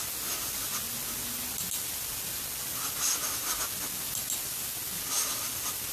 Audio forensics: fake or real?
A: real